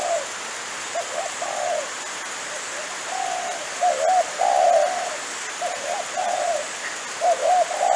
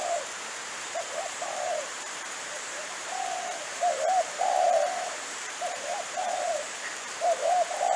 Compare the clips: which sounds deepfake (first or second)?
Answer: second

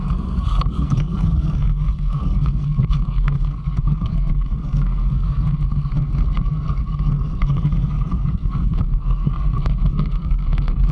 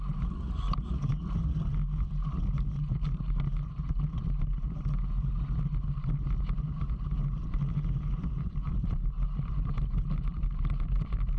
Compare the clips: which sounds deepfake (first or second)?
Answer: first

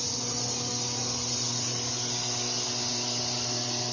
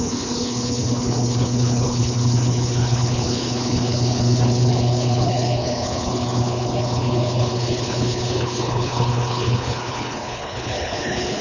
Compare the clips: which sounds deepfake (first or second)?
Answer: second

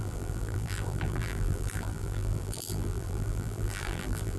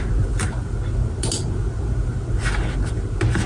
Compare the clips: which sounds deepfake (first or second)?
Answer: first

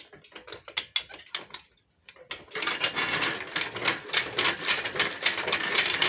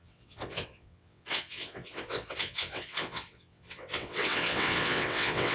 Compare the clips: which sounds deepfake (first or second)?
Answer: second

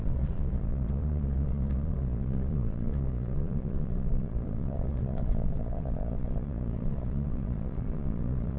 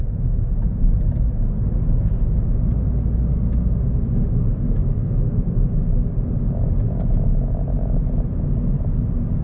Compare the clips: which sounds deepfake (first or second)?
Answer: first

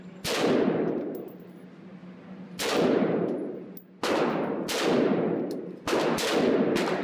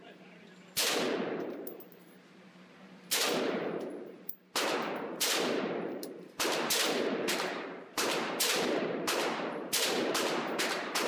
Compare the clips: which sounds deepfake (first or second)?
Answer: second